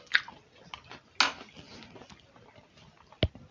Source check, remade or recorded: recorded